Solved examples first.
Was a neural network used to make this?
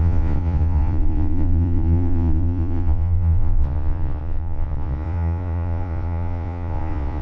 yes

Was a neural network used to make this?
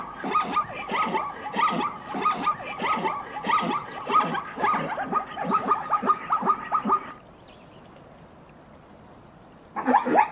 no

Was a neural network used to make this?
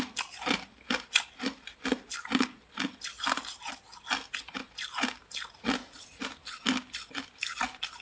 no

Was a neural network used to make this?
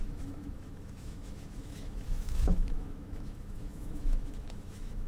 yes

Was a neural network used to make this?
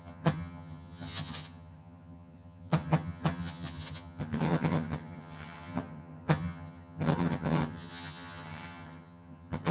yes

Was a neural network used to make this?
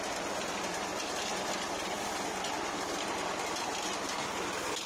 no